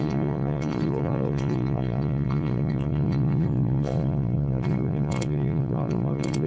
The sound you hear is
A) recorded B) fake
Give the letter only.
B